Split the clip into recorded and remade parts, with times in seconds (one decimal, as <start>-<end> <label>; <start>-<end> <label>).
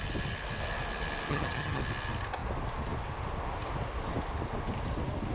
0.0-1.3 recorded; 1.3-1.8 remade; 1.8-5.3 recorded